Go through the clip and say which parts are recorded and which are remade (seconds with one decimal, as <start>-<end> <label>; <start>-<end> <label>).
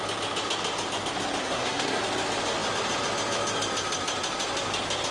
0.0-1.4 recorded; 1.4-2.0 remade; 2.0-5.1 recorded